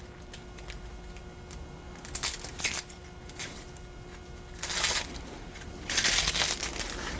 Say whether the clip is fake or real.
real